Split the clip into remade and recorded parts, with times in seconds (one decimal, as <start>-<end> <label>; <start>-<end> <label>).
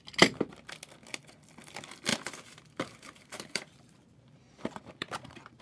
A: 0.0-2.1 recorded; 2.1-5.6 remade